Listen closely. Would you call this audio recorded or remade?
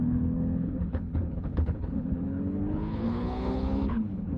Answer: remade